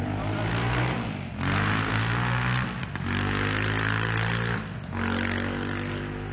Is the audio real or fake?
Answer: real